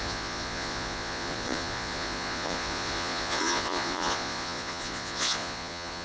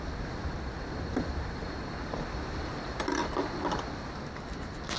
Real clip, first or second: second